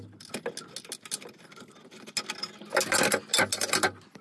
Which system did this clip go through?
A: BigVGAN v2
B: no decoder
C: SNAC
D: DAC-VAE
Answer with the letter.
B